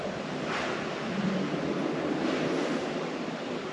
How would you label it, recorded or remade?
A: recorded